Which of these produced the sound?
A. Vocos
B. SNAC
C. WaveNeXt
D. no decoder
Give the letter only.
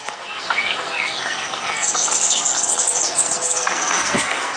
B